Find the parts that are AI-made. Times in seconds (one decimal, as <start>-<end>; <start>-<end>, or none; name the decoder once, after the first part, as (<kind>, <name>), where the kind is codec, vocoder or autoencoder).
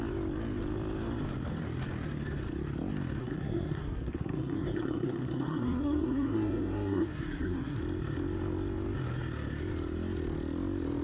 3.2-7.8 (codec, SNAC)